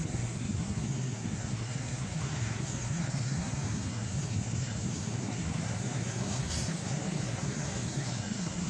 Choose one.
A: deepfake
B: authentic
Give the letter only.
A